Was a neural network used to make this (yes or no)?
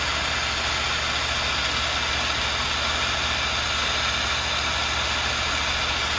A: no